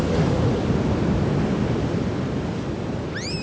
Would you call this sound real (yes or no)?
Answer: yes